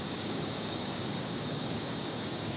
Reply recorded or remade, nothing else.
remade